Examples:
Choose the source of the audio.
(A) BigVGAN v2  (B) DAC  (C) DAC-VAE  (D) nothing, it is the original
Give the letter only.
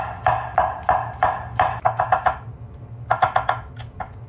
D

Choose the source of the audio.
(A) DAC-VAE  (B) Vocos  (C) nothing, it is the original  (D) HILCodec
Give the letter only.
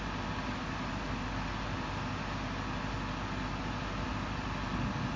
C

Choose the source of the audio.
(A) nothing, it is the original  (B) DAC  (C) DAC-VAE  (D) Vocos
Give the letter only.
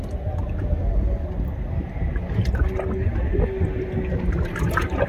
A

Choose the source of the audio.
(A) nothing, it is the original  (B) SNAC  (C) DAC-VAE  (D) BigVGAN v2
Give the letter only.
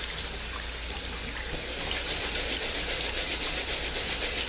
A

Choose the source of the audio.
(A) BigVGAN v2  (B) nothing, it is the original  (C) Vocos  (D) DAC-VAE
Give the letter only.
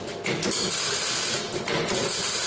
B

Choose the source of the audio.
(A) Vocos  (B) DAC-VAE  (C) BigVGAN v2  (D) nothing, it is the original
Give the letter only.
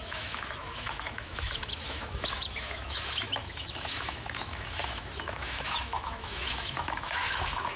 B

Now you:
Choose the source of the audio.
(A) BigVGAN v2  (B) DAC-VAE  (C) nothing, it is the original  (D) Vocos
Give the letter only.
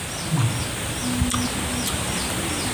C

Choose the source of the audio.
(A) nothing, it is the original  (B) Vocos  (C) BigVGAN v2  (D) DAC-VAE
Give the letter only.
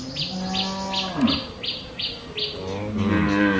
A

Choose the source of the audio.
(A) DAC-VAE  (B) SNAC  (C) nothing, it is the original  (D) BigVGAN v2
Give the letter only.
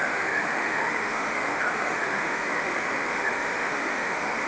A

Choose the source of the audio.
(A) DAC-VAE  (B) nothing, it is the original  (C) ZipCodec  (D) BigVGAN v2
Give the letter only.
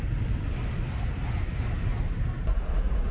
B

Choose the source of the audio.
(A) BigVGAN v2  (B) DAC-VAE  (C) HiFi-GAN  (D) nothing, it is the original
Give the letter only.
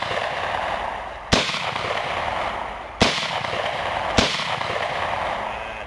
D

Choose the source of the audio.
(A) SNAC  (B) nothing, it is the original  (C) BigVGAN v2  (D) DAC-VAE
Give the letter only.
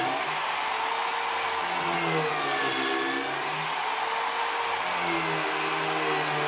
B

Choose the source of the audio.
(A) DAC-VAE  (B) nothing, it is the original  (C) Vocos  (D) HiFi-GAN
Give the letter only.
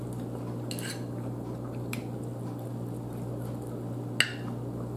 B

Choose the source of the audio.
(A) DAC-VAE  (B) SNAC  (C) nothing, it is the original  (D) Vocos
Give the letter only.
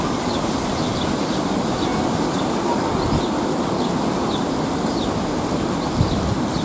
C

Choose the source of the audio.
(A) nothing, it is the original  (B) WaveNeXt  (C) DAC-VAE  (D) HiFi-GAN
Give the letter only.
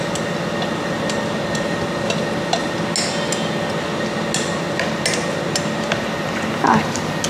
A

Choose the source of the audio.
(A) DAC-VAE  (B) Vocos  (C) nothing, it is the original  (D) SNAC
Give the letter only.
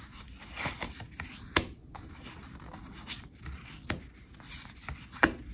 C